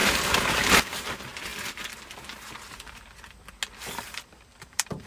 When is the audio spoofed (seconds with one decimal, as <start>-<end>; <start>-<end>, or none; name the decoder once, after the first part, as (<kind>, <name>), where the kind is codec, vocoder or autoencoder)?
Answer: 0.0-1.5 (vocoder, BigVGAN v2); 4.6-5.1